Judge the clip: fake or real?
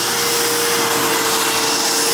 real